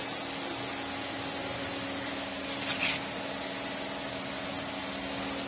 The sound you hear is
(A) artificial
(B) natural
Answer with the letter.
B